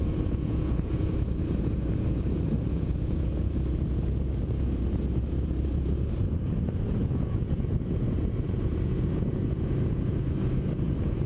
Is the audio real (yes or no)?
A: no